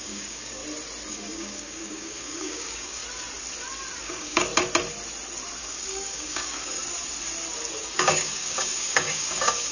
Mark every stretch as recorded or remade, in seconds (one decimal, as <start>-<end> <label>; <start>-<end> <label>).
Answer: 0.0-0.6 remade; 0.6-1.1 recorded; 1.1-3.0 remade; 3.0-4.0 recorded; 4.0-4.5 remade; 4.5-5.6 recorded; 5.6-6.8 remade; 6.8-7.8 recorded; 7.8-9.7 remade